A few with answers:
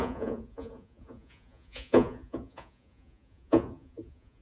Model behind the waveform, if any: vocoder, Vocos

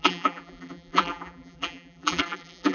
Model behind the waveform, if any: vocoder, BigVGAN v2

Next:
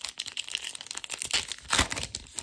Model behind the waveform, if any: none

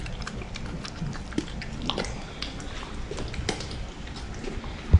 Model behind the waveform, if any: none